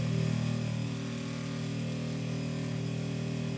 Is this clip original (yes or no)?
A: yes